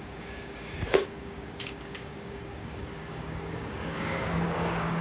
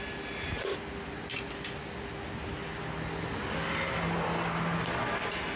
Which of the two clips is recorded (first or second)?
second